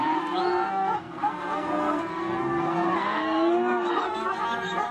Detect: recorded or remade remade